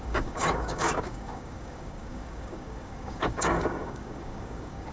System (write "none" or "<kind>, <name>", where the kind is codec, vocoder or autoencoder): codec, DAC